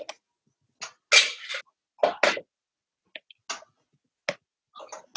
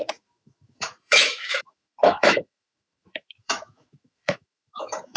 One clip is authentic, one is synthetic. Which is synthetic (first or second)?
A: second